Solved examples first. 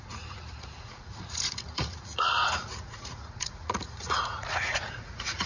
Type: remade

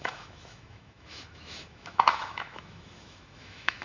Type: remade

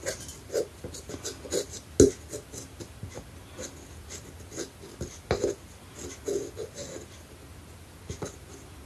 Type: recorded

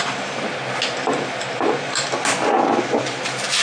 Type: recorded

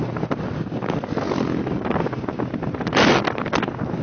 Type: recorded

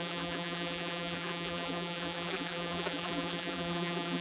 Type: remade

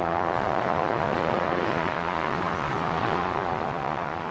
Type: remade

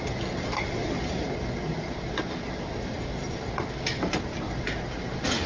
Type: recorded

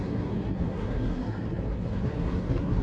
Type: remade